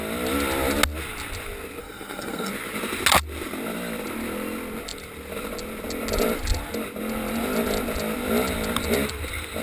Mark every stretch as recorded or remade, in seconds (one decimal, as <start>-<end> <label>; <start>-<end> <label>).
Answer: 0.0-1.8 recorded; 1.8-2.5 remade; 2.5-9.6 recorded